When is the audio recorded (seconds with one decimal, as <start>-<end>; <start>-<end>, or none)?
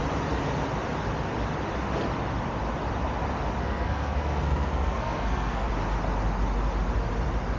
0.0-3.6; 5.7-7.6